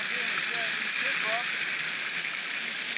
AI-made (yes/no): no